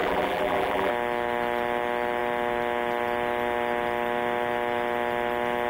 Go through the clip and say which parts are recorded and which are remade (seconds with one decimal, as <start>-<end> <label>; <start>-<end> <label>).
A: 0.0-0.9 remade; 0.9-5.7 recorded